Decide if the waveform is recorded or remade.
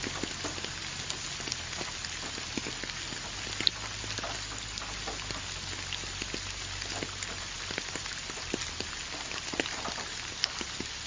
recorded